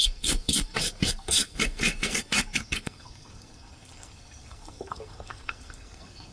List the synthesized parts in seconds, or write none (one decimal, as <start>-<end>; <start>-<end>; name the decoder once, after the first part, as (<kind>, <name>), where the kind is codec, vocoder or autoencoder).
0.0-6.3 (codec, SNAC)